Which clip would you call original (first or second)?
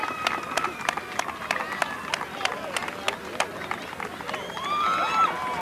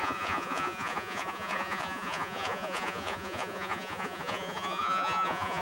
first